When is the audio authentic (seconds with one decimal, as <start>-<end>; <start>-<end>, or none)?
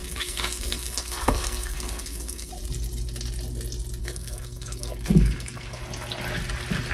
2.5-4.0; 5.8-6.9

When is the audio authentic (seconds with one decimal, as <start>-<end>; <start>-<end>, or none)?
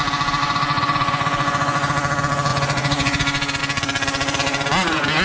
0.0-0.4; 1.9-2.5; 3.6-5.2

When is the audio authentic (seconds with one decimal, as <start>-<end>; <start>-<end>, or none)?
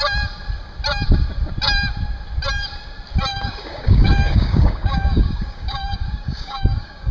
0.0-3.3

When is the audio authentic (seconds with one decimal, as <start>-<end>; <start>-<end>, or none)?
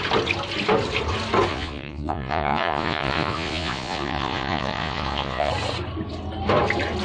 0.0-1.5; 5.5-7.0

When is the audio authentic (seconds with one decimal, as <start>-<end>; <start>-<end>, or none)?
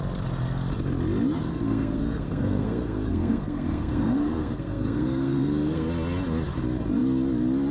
0.0-1.5; 5.9-7.7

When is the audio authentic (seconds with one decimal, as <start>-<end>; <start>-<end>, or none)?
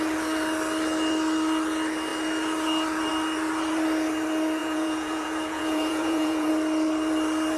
0.0-4.6; 6.5-7.6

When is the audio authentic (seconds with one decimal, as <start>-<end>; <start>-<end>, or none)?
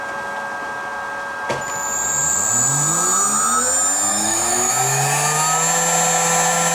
0.0-4.1; 4.7-6.7